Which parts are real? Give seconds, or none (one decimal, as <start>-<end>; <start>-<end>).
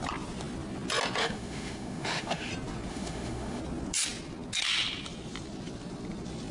0.0-1.2; 2.5-2.9; 3.6-6.5